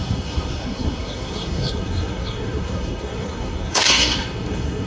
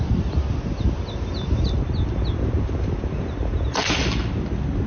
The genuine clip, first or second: second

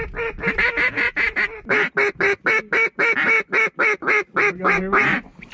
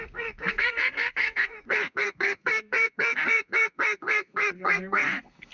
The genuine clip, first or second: first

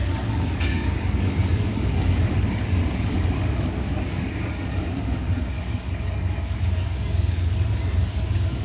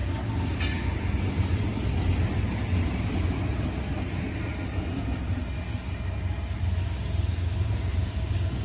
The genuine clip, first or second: second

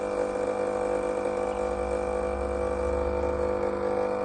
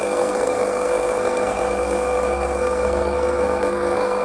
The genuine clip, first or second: first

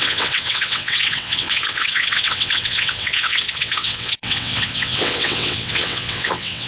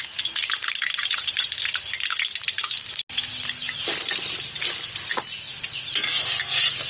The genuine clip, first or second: second